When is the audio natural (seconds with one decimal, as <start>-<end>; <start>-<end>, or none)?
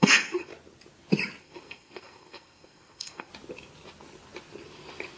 0.5-1.4; 3.3-5.2